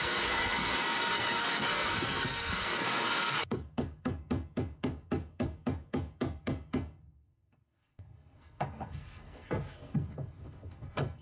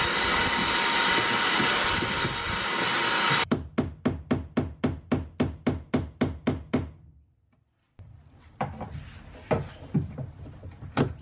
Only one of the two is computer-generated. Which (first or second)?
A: first